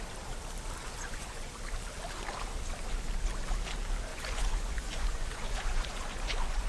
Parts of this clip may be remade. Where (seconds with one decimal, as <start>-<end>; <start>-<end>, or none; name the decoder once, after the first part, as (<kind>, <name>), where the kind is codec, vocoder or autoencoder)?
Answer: 0.8-1.5 (vocoder, Vocos); 4.1-6.7